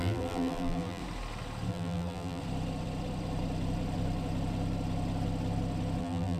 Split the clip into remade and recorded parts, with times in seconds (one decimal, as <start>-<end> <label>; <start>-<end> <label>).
0.0-1.0 remade; 1.0-1.7 recorded; 1.7-2.4 remade; 2.4-6.0 recorded; 6.0-6.4 remade